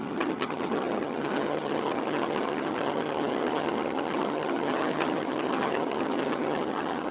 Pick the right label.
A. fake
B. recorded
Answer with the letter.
A